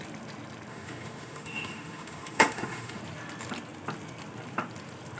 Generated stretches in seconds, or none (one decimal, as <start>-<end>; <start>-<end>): 0.7-3.0